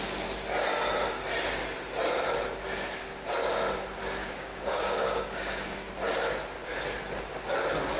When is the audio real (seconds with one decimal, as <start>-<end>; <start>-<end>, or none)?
0.0-4.2; 5.9-8.0